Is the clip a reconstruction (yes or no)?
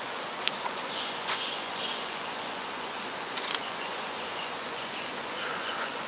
yes